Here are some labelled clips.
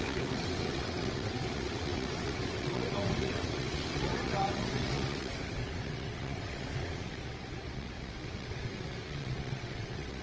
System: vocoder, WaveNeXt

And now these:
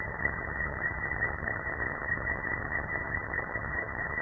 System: vocoder, HiFi-GAN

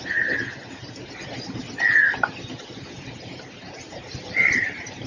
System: none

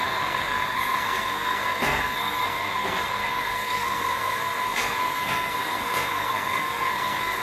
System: codec, SNAC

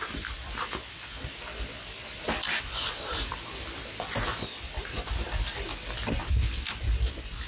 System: none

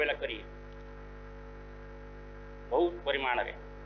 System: none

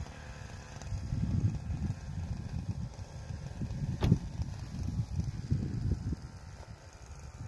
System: none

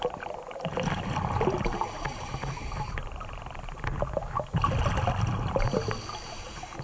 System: none